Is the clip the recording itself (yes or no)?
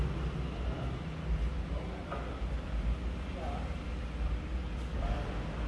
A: yes